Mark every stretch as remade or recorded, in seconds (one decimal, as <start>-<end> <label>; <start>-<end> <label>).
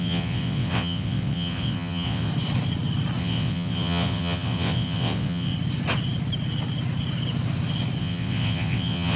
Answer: 0.0-2.3 remade; 2.3-3.2 recorded; 3.2-5.5 remade; 5.5-8.0 recorded; 8.0-9.2 remade